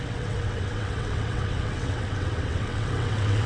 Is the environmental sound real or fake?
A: fake